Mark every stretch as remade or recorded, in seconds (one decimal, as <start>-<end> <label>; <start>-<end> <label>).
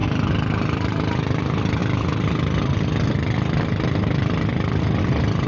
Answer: 0.0-5.5 recorded